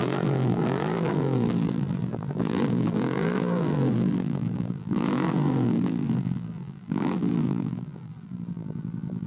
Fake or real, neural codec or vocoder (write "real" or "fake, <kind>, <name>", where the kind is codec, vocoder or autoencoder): fake, vocoder, BigVGAN v2